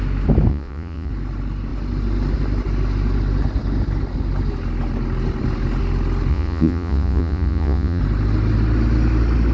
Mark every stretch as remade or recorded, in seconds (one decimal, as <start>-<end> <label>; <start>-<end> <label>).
0.0-0.5 recorded; 0.5-1.1 remade; 1.1-6.3 recorded; 6.3-8.0 remade; 8.0-9.5 recorded